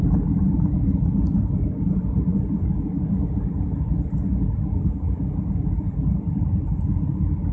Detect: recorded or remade recorded